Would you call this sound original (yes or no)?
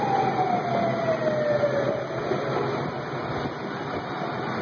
yes